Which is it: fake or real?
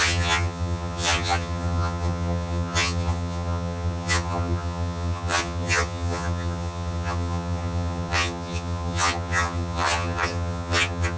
fake